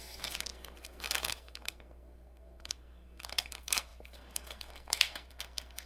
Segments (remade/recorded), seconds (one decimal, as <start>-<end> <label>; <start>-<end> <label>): 0.0-5.9 remade